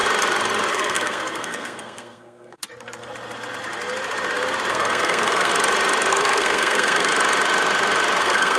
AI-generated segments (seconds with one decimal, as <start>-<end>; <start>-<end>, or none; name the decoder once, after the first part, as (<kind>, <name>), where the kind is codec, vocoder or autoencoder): 0.7-2.6 (codec, SNAC); 4.7-5.5; 6.1-7.1; 8.2-8.6